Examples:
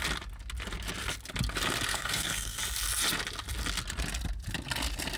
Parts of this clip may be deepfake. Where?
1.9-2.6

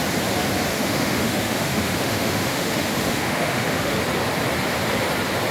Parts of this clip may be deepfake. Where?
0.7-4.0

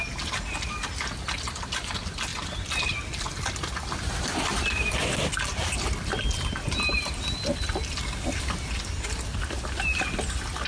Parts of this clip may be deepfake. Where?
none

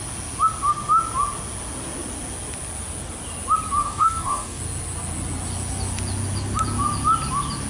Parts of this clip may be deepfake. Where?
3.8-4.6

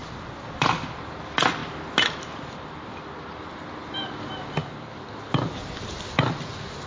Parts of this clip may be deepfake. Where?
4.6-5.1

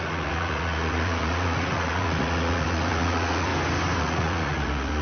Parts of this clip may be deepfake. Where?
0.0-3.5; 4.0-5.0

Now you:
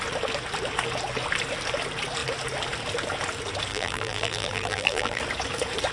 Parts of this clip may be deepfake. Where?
3.7-5.2